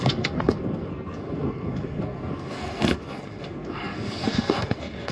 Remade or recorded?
remade